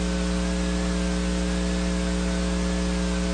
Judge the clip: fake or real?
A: real